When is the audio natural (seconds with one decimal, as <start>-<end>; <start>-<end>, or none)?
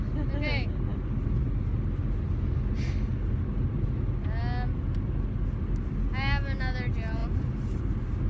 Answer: 0.0-7.2